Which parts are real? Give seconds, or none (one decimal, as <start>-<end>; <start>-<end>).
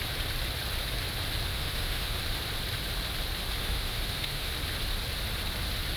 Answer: 0.0-1.5; 2.2-3.6; 4.5-6.0